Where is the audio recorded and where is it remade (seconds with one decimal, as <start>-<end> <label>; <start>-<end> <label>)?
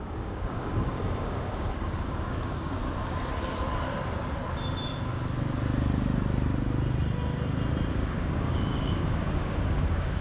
0.0-2.8 remade; 2.8-7.9 recorded; 7.9-10.2 remade